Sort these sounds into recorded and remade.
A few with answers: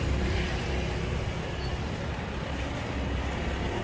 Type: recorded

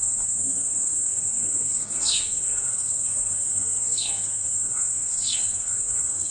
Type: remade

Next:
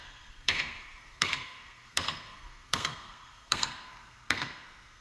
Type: remade